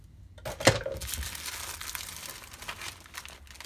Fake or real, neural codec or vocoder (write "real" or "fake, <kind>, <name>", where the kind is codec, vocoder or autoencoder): real